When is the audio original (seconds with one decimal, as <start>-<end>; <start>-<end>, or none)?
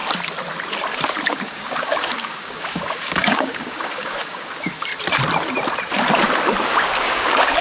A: 0.0-1.3; 4.9-6.6